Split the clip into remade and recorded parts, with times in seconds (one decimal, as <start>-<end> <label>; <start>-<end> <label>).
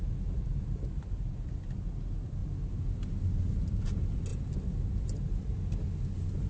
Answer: 0.0-0.5 recorded; 0.5-1.9 remade; 1.9-4.3 recorded; 4.3-5.5 remade; 5.5-6.5 recorded